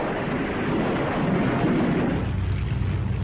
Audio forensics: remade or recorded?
recorded